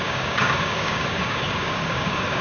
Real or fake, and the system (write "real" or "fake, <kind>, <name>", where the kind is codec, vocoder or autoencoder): fake, codec, DAC